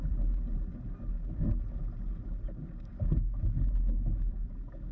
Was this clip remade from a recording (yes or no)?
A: no